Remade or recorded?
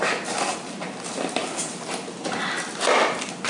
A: recorded